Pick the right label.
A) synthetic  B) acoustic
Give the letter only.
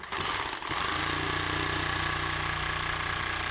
B